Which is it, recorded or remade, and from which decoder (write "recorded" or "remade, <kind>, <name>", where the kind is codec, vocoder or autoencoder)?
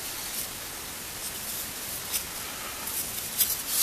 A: recorded